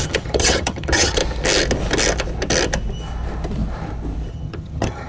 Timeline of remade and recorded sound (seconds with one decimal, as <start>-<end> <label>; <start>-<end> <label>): 0.0-1.2 remade; 1.2-4.3 recorded; 4.3-5.1 remade